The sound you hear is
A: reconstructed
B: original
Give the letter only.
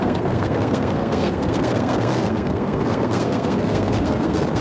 A